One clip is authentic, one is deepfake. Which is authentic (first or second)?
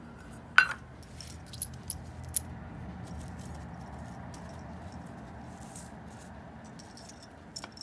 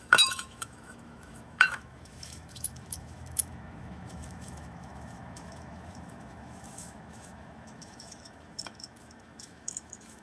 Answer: first